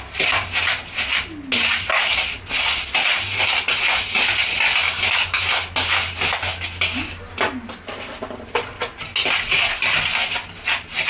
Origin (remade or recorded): recorded